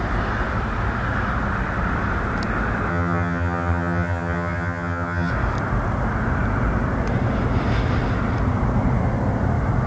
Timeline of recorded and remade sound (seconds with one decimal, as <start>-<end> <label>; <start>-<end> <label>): 0.0-2.9 recorded; 2.9-5.3 remade; 5.3-9.9 recorded